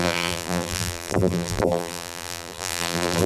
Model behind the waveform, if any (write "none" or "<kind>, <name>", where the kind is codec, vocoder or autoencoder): vocoder, BigVGAN v2